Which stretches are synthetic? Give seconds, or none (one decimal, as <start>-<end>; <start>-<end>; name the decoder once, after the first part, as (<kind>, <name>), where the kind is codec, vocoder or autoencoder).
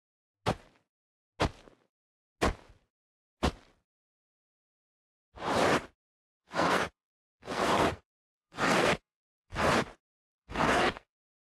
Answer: 6.4-9.7 (codec, SNAC); 10.3-11.6